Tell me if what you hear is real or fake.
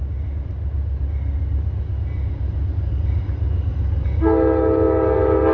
real